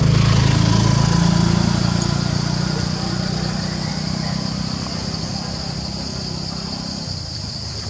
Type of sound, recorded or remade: recorded